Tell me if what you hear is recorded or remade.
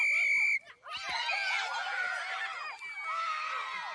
recorded